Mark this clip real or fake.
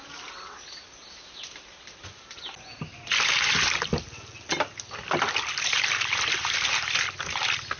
real